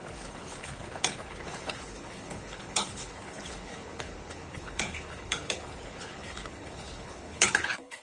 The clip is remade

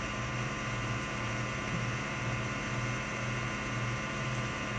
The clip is remade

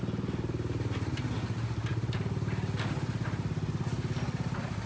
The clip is recorded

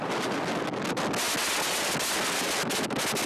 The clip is recorded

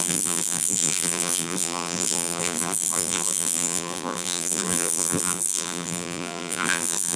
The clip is remade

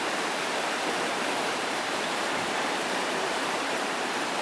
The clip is remade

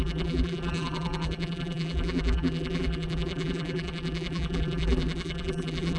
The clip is remade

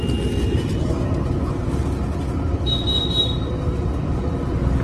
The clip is recorded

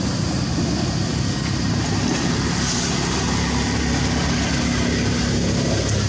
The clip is recorded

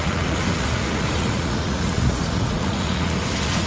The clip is remade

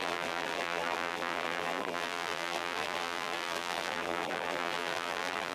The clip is remade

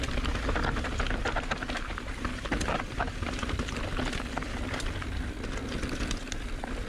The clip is recorded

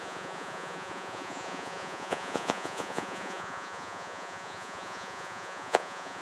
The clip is remade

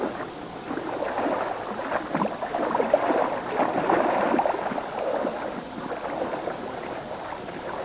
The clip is recorded